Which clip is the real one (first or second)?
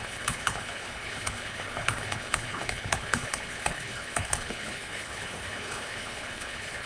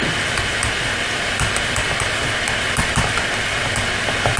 second